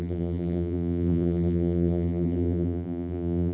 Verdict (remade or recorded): remade